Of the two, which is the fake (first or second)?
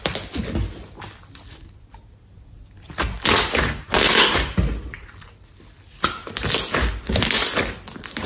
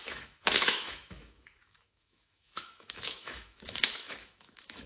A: second